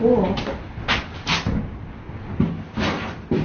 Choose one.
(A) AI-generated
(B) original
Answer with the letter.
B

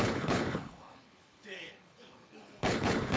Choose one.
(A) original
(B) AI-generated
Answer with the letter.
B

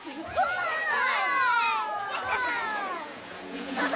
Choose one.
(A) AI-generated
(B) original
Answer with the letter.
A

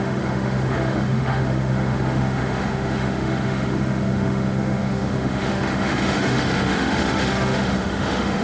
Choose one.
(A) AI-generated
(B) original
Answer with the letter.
A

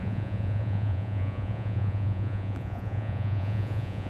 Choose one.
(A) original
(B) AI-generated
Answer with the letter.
B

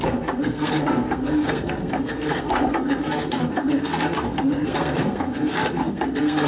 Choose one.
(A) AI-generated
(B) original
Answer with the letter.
A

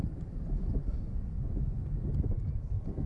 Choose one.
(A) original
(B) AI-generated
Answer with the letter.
A